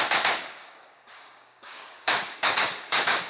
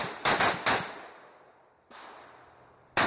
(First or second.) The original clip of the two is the second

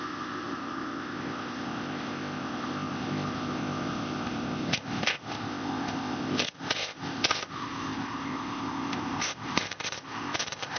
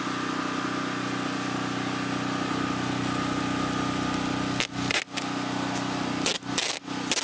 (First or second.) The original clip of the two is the second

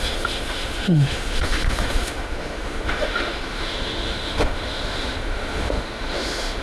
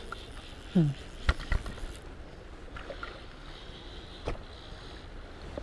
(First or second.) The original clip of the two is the second